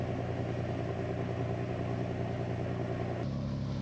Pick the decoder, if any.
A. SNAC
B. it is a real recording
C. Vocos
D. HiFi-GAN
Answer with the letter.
B